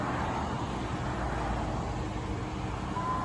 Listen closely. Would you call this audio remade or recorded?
recorded